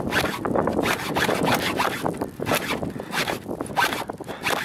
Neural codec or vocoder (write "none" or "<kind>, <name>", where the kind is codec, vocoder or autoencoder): none